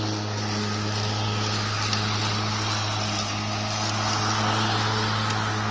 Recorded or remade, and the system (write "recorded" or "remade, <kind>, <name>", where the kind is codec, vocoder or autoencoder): recorded